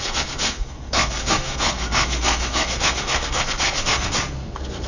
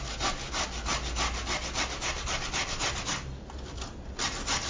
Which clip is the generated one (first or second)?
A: first